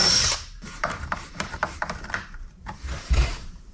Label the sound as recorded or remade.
remade